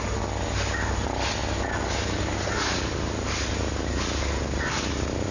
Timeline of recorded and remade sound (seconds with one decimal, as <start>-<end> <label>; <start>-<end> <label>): 0.0-5.3 recorded